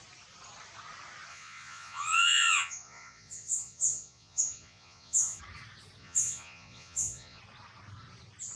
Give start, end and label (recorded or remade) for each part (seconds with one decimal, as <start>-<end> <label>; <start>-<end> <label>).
0.0-1.3 recorded; 1.3-5.4 remade; 5.4-6.0 recorded; 6.0-7.4 remade; 7.4-8.6 recorded